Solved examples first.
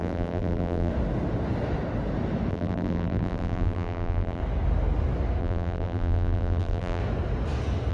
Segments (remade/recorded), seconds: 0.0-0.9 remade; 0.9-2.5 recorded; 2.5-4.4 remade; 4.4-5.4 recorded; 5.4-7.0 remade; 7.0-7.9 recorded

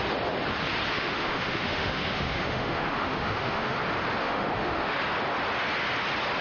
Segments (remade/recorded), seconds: 0.0-0.9 recorded; 0.9-3.8 remade; 3.8-4.2 recorded; 4.2-5.0 remade; 5.0-6.4 recorded

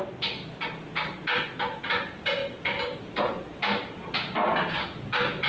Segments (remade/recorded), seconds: 0.0-5.5 recorded

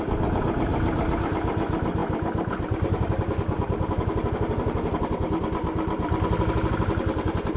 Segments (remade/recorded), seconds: 0.0-0.7 remade; 0.7-1.3 recorded; 1.3-7.6 remade

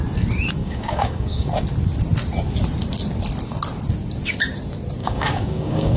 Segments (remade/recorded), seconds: 0.0-0.6 recorded; 0.6-1.5 remade; 1.5-5.0 recorded; 5.0-6.0 remade